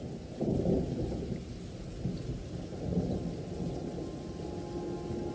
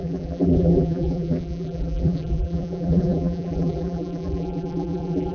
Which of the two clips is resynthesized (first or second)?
second